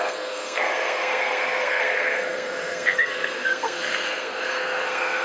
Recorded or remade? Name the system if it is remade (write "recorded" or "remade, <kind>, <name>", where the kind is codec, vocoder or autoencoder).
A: remade, codec, SNAC